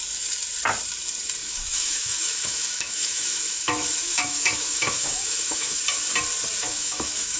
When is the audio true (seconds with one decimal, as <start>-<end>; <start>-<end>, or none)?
0.0-1.4; 5.8-6.6